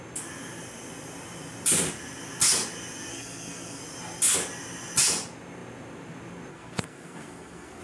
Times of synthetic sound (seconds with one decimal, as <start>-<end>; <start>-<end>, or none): 3.1-3.8; 6.5-7.8